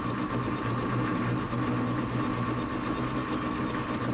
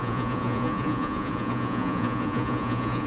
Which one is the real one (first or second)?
first